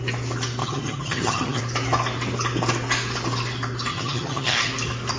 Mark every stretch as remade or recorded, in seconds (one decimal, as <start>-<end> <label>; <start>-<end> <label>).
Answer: 0.0-0.6 recorded; 0.6-1.6 remade; 1.6-3.9 recorded; 3.9-4.7 remade; 4.7-5.2 recorded